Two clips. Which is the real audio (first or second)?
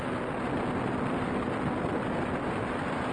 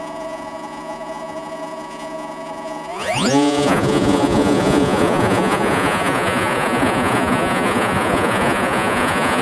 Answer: first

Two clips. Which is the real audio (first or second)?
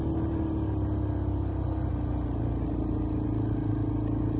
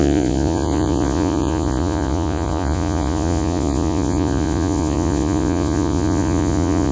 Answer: first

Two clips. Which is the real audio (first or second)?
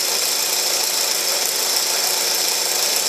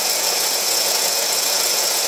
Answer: first